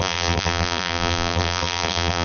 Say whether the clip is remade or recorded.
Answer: remade